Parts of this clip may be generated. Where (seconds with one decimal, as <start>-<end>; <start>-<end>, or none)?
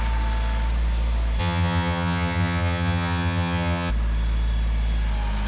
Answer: 1.4-3.9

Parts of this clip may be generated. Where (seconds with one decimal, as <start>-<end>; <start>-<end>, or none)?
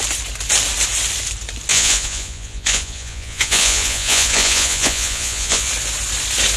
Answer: 1.7-5.7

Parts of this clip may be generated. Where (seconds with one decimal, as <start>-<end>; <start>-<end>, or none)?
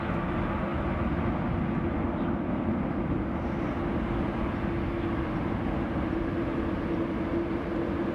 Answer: none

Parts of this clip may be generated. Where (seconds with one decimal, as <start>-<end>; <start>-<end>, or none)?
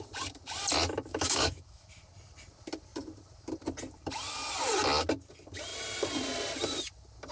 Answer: 1.1-2.0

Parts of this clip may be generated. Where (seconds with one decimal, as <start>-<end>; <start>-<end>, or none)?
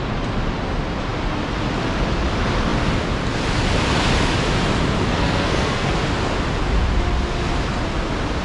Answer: 5.1-6.0